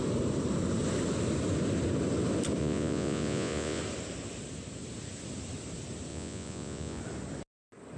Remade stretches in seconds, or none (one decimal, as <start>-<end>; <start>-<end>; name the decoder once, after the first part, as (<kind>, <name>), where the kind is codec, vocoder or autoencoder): 2.6-3.8 (vocoder, Vocos); 6.1-7.0